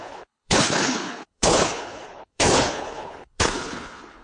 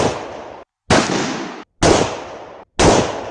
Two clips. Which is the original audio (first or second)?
second